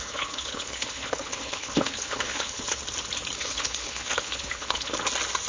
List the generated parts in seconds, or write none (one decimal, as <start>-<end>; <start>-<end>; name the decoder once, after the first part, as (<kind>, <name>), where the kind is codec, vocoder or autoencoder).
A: 0.0-2.8 (codec, HILCodec); 3.4-4.9